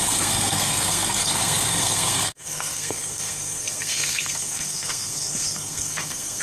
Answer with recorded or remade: remade